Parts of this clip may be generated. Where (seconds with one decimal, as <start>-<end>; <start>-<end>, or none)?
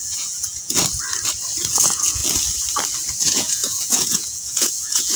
0.0-0.8; 1.7-2.2; 3.2-5.2